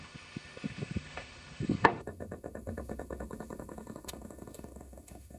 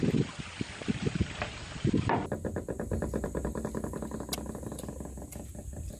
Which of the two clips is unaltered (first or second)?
second